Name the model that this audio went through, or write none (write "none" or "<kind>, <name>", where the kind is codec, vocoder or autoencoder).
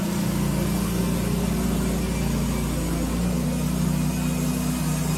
none